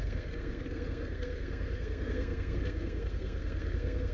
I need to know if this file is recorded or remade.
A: remade